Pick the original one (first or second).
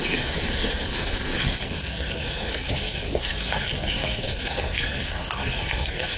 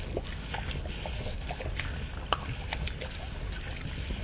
second